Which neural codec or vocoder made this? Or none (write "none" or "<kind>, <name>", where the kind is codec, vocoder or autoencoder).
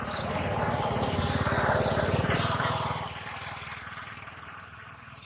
vocoder, BigVGAN v2